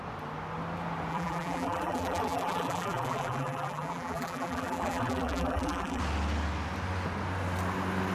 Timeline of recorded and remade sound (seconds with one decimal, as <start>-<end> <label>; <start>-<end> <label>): 0.0-1.1 recorded; 1.1-6.0 remade; 6.0-8.1 recorded